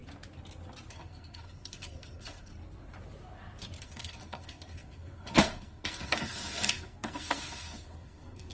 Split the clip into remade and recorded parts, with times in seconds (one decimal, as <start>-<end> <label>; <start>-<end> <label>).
0.0-0.9 recorded; 0.9-2.5 remade; 2.5-3.8 recorded; 3.8-8.5 remade